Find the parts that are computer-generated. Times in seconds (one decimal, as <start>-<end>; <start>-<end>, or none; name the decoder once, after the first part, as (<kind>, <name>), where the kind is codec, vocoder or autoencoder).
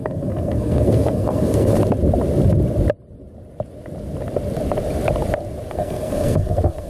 0.0-1.8 (codec, SNAC); 5.7-6.9